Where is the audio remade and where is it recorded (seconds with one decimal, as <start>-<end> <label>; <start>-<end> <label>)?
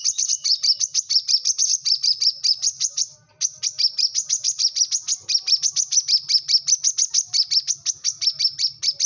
0.0-9.1 recorded